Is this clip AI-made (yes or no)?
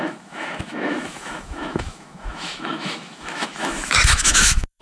yes